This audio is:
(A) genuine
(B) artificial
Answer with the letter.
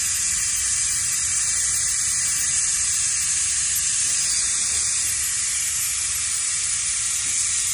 B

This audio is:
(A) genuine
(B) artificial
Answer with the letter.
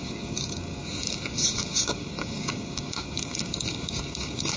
B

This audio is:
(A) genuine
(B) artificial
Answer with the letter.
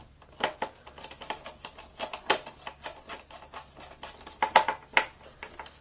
A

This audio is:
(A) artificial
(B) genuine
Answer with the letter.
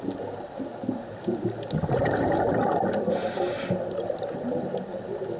B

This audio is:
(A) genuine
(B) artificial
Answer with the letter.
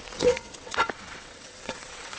B